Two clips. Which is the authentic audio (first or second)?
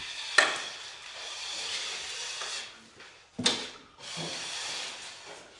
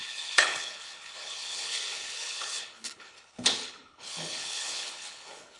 first